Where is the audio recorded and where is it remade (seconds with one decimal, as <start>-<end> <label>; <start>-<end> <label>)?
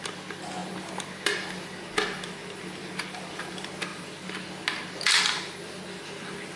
0.0-6.6 recorded